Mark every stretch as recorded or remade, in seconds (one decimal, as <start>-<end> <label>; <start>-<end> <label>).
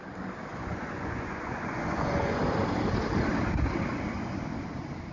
0.0-0.5 recorded; 0.5-2.4 remade; 2.4-5.1 recorded